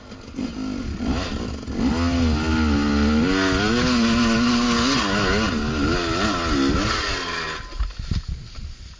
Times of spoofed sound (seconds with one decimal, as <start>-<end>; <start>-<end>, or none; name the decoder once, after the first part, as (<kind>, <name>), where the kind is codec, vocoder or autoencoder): none